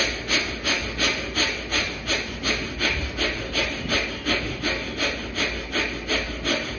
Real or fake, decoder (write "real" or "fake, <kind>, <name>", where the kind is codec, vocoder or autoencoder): real